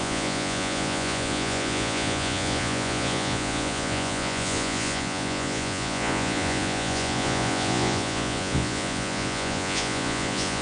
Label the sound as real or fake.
fake